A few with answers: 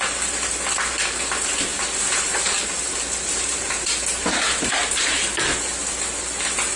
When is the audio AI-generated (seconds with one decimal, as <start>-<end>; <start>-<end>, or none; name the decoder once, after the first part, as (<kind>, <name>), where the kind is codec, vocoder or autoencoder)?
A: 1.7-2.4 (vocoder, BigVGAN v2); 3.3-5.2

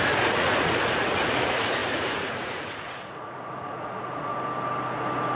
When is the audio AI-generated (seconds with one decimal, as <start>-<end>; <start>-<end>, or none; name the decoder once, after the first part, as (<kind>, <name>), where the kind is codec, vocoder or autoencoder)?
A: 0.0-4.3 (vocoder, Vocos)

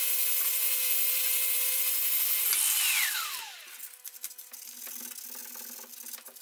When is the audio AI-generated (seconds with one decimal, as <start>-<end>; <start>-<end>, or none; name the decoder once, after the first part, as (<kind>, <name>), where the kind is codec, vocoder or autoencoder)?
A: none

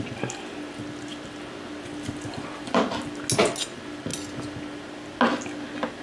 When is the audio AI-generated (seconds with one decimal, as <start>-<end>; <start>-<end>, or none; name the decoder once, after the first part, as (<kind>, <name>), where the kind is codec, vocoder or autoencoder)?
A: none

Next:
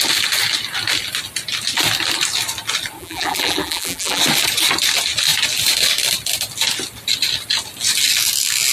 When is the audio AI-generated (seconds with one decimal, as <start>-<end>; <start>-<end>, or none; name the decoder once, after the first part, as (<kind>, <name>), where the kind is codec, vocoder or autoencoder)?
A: 3.0-4.2 (vocoder, BigVGAN v2)

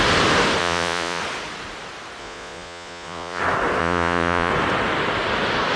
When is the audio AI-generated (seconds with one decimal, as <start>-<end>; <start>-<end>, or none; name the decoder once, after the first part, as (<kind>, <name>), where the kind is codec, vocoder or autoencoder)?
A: 0.6-1.2 (vocoder, Vocos); 2.2-3.4; 3.8-4.5

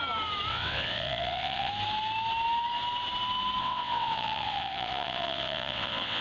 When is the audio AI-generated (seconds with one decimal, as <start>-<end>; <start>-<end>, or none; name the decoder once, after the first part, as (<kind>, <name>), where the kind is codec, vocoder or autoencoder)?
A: 0.5-1.7 (vocoder, WaveNeXt); 3.6-6.2